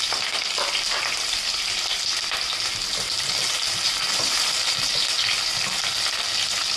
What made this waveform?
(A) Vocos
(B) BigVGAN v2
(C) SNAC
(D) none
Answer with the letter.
D